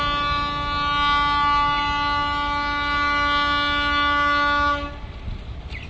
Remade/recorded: recorded